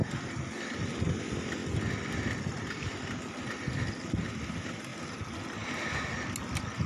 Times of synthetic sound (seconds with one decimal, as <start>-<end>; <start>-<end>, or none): none